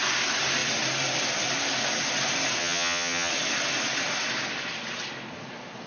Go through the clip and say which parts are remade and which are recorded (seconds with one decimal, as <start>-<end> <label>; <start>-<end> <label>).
0.0-2.6 recorded; 2.6-3.3 remade; 3.3-5.9 recorded